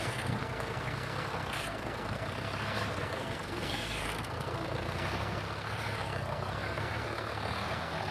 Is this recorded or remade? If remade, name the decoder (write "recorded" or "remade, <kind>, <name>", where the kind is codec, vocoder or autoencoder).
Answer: remade, codec, SNAC